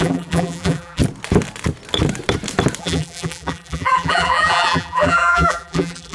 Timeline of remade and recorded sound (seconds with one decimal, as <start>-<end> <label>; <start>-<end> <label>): 0.0-1.0 remade; 1.0-2.8 recorded; 2.8-6.1 remade